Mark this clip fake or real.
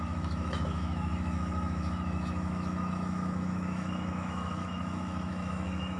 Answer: fake